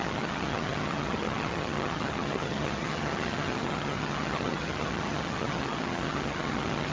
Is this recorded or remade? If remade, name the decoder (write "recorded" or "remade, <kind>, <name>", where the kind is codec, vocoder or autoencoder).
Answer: remade, vocoder, HiFi-GAN